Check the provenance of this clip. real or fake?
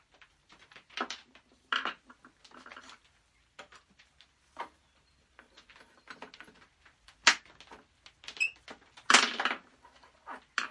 real